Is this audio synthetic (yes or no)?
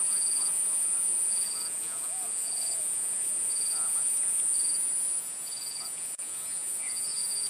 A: yes